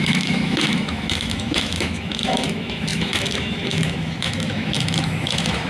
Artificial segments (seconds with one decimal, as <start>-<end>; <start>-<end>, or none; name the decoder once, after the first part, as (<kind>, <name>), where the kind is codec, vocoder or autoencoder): 0.0-5.7 (autoencoder, DAC-VAE)